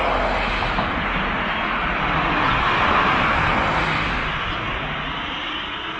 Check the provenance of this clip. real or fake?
real